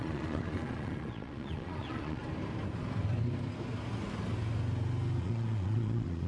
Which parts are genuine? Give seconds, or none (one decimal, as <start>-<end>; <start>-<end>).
2.2-5.2